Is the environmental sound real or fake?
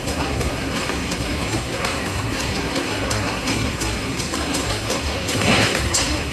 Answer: fake